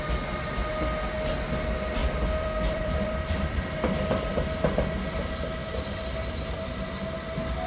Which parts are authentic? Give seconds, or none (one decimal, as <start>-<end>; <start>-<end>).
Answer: 0.0-2.0; 4.2-7.7